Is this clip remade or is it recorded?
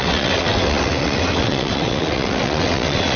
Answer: remade